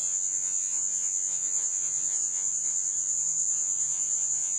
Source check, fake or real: fake